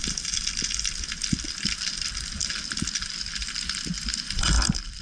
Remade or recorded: remade